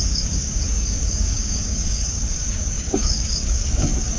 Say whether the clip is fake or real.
fake